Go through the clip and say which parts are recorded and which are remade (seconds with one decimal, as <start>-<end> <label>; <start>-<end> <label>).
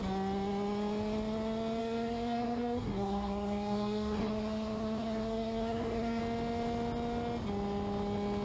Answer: 0.0-1.8 recorded; 1.8-6.2 remade; 6.2-8.4 recorded